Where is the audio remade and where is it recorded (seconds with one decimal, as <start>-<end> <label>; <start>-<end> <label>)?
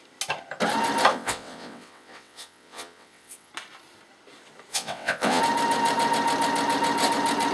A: 0.0-1.1 recorded; 1.1-3.5 remade; 3.5-4.7 recorded; 4.7-5.4 remade; 5.4-7.5 recorded